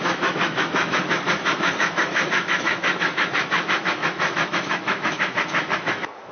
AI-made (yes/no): yes